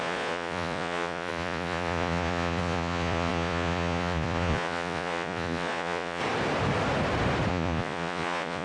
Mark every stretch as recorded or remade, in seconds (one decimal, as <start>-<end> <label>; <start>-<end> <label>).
0.0-6.2 remade; 6.2-7.5 recorded; 7.5-8.6 remade